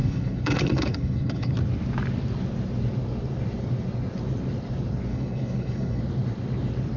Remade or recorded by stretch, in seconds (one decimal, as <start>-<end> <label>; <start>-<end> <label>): 0.0-1.5 remade; 1.5-5.1 recorded; 5.1-6.0 remade; 6.0-7.0 recorded